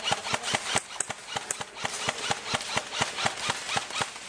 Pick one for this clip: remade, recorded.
recorded